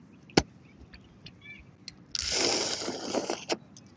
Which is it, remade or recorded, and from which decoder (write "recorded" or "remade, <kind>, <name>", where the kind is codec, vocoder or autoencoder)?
recorded